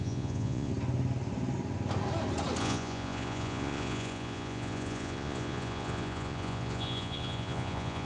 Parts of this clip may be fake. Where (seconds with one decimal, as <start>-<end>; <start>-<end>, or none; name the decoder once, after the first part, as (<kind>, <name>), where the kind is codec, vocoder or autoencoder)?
0.0-0.7 (vocoder, Vocos); 2.6-8.1